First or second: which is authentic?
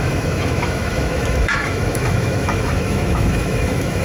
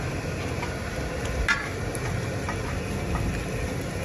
second